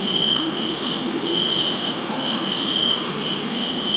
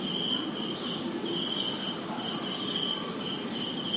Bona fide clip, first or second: second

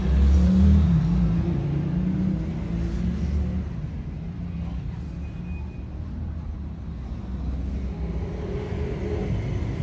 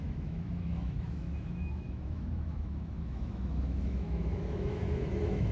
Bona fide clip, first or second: first